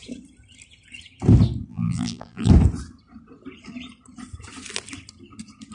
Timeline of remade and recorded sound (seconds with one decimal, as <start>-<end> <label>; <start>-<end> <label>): 0.0-1.7 recorded; 1.7-2.5 remade; 2.5-5.7 recorded